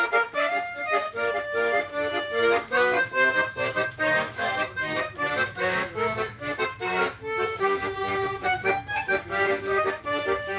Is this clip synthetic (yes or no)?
yes